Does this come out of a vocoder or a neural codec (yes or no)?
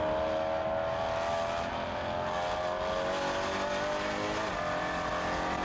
no